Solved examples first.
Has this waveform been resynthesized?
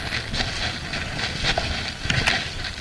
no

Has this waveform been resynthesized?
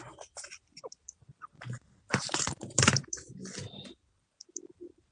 yes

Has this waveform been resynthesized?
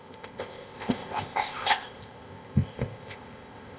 yes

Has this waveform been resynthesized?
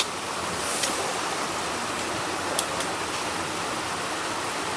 no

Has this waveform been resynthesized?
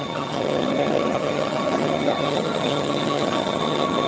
yes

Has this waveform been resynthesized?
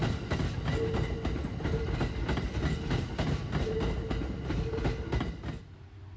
no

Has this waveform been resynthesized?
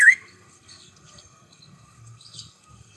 yes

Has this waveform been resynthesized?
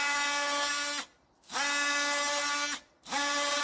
no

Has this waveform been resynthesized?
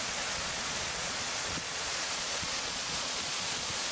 yes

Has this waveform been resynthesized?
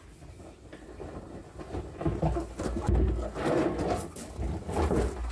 no